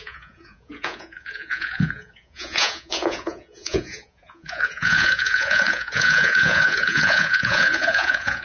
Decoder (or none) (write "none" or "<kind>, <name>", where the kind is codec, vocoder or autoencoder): vocoder, Vocos